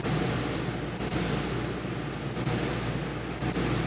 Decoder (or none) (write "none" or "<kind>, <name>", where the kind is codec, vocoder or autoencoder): none